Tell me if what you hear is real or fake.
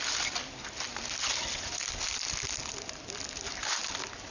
real